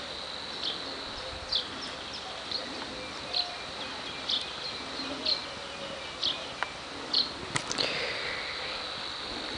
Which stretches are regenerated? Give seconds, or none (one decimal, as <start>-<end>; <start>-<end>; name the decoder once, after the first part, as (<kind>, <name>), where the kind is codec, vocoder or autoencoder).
none